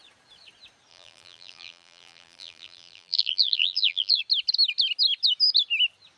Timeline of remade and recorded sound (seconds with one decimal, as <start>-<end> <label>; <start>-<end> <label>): 0.0-0.9 recorded; 0.9-4.2 remade; 4.2-6.2 recorded